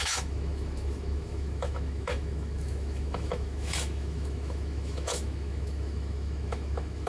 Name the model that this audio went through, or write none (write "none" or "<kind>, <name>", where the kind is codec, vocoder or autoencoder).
autoencoder, DAC-VAE